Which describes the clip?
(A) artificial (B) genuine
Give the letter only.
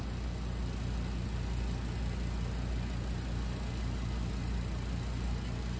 B